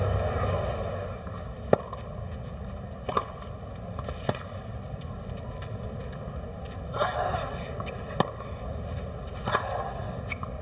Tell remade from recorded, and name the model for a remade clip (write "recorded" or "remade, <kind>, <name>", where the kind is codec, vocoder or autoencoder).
recorded